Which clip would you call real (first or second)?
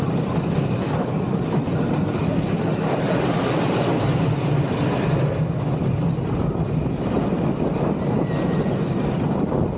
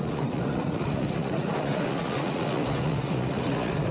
first